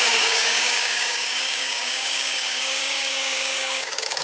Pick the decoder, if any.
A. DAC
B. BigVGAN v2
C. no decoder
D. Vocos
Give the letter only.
A